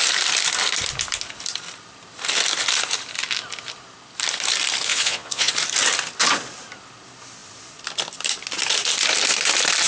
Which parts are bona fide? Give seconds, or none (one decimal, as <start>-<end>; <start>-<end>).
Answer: 0.0-4.9; 5.5-9.9